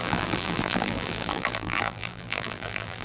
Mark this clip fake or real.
fake